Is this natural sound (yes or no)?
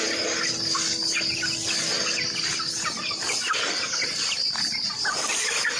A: yes